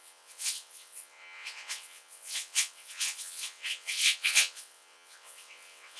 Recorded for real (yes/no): no